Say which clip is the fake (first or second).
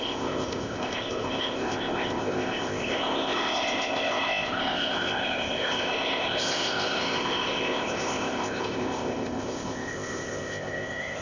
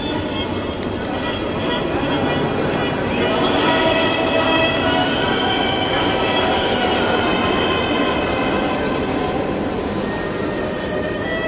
first